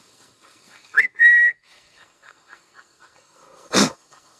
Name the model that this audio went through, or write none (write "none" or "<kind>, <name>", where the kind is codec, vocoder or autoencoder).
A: codec, SNAC